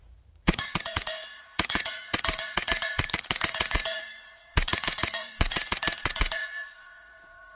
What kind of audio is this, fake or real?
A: fake